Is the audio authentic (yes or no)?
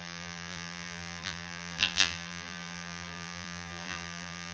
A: no